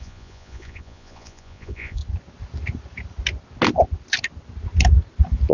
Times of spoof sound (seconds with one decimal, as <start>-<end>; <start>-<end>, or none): 0.0-2.0